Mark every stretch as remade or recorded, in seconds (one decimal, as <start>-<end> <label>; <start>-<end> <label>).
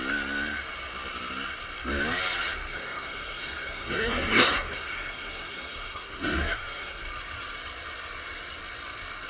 0.0-2.7 recorded; 2.7-7.0 remade; 7.0-9.3 recorded